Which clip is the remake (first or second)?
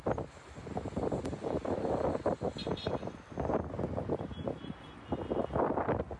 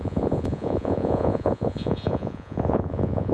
second